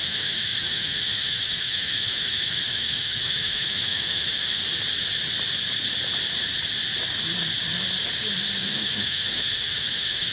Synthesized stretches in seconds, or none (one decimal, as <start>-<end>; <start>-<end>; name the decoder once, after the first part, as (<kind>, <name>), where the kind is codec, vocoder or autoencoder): 0.0-4.6 (autoencoder, DAC-VAE); 8.6-10.3